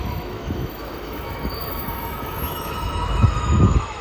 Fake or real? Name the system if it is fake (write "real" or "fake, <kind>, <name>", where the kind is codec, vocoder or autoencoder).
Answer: fake, autoencoder, DAC-VAE